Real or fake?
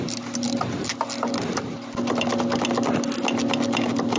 real